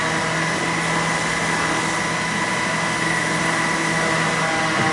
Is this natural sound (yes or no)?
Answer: yes